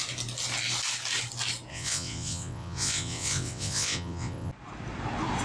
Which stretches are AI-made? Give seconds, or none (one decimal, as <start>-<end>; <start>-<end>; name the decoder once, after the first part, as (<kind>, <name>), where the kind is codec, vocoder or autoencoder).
1.7-4.5 (vocoder, WaveNeXt)